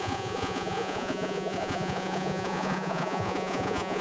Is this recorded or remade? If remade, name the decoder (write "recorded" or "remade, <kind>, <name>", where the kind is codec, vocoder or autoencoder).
remade, vocoder, Vocos